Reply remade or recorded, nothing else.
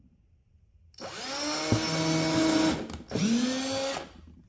recorded